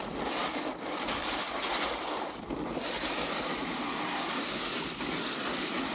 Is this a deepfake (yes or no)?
no